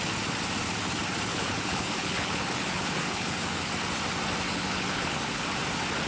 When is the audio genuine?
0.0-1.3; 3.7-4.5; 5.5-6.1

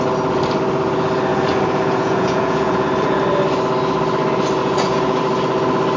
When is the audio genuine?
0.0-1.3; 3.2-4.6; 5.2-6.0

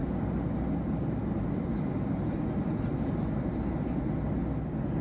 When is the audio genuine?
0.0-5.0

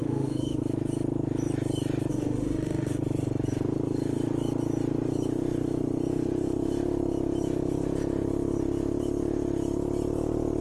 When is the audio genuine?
0.6-2.1; 3.0-10.6